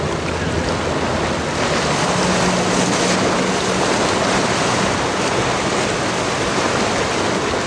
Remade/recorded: recorded